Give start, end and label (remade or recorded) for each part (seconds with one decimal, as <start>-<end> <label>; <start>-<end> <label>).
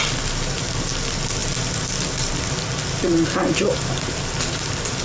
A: 0.0-5.0 recorded